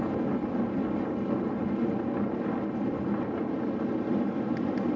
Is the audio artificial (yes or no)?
no